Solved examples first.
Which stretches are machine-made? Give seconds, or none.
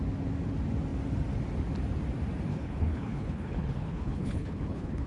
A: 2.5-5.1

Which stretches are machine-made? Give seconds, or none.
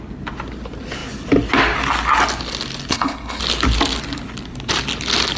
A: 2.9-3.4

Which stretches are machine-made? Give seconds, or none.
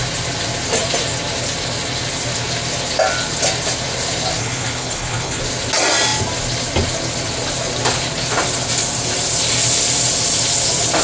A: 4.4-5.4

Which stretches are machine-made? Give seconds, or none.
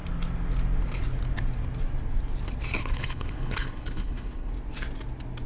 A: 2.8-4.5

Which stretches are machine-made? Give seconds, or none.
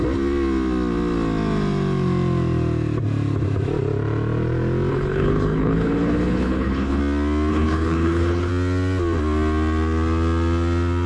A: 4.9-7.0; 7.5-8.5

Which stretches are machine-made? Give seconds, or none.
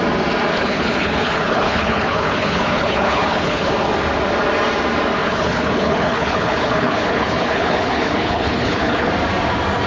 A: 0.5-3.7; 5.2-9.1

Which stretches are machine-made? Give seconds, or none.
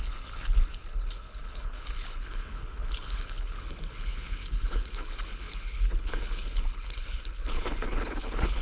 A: 0.0-8.6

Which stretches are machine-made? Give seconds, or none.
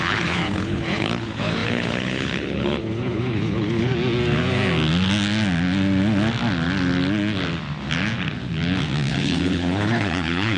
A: 0.0-3.9; 9.1-10.6